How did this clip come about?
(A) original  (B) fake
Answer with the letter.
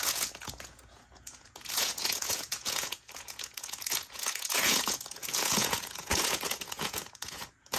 B